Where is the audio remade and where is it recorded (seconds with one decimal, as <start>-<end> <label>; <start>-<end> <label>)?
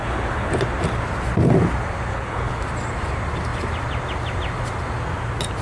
0.0-0.5 remade; 0.5-2.1 recorded; 2.1-2.6 remade; 2.6-5.6 recorded